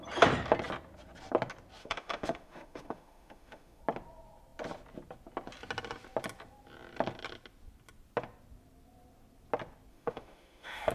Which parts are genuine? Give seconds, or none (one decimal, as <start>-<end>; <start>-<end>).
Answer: 0.0-1.8; 3.8-9.9